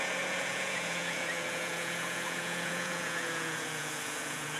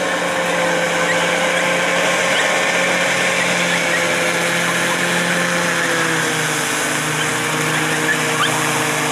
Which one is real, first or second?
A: second